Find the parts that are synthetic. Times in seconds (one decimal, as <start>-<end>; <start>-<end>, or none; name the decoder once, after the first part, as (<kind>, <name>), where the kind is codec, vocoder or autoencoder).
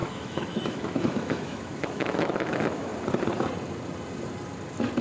0.0-2.9 (autoencoder, DAC-VAE)